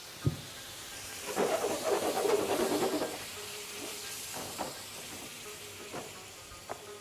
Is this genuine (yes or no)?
no